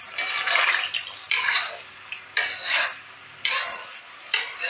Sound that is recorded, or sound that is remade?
recorded